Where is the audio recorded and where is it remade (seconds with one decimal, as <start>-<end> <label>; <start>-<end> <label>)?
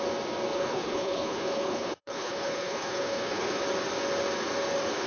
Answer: 0.0-0.5 recorded; 0.5-3.6 remade; 3.6-5.1 recorded